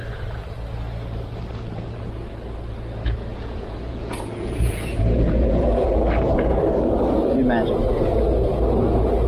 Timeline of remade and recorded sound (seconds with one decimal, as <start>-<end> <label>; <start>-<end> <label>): 0.0-3.3 recorded; 3.3-6.0 remade; 6.0-9.3 recorded